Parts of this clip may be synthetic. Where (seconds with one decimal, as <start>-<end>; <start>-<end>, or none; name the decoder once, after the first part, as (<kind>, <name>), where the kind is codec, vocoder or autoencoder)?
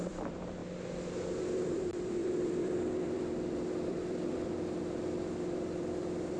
0.0-0.6 (vocoder, BigVGAN v2); 1.4-6.4